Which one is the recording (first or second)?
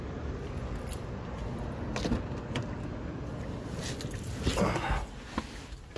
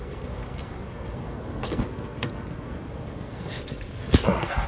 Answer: first